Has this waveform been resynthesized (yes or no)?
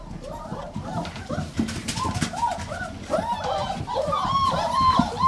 yes